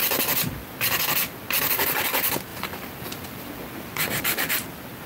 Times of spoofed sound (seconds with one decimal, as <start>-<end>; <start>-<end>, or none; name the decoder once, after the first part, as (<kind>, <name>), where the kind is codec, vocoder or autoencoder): none